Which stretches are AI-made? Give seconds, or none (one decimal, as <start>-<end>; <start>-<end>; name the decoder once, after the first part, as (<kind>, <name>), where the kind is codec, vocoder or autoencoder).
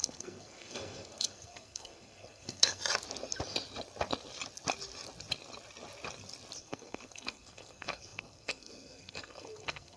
0.0-2.8 (codec, SNAC); 6.6-10.0